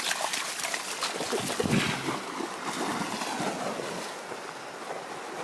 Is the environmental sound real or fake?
real